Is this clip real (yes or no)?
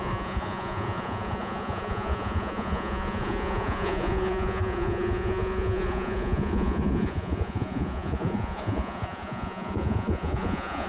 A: no